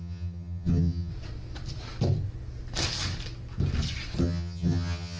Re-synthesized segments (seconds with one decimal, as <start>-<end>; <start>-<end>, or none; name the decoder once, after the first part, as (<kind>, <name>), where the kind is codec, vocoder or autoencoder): 0.0-1.1 (vocoder, HiFi-GAN); 4.2-5.2